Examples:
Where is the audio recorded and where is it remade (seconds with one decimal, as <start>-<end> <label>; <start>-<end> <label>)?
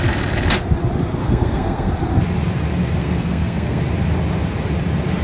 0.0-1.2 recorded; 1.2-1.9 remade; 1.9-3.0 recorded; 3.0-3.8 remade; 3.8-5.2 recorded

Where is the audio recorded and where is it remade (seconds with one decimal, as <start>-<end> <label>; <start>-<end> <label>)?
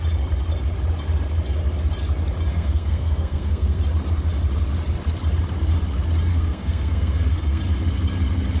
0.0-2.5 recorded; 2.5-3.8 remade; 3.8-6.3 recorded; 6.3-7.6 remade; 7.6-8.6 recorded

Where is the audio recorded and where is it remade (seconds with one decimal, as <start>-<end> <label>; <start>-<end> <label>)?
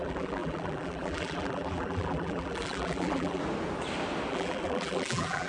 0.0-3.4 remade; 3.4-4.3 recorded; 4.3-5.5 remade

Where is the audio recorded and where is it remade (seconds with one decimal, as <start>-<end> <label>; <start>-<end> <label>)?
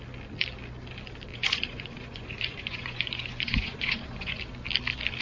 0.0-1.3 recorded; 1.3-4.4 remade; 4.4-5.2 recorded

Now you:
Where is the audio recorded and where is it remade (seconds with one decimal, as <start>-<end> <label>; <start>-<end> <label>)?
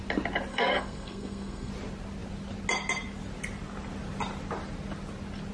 0.0-0.5 recorded; 0.5-1.7 remade; 1.7-5.5 recorded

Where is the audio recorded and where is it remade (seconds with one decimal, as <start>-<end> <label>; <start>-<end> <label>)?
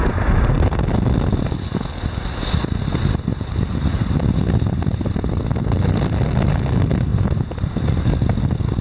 0.0-3.3 recorded; 3.3-4.1 remade; 4.1-7.1 recorded; 7.1-7.7 remade; 7.7-8.8 recorded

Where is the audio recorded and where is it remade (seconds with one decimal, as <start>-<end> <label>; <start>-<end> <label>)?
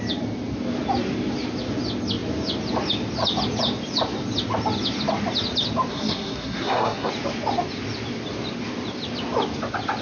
0.0-5.9 recorded; 5.9-7.1 remade; 7.1-10.0 recorded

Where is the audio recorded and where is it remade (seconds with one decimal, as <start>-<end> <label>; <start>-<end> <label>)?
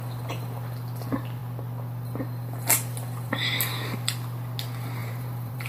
0.0-5.0 recorded; 5.0-5.7 remade